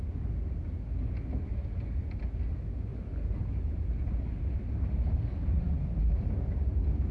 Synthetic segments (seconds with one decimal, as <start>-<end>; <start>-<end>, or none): 1.5-2.2; 2.9-6.0